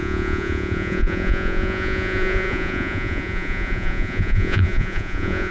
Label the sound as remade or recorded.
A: remade